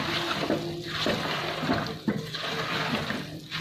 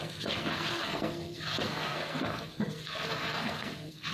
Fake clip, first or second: second